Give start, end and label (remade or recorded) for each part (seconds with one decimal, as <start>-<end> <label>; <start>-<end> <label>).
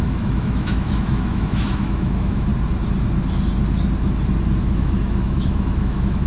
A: 0.0-2.5 remade; 2.5-4.6 recorded; 4.6-6.3 remade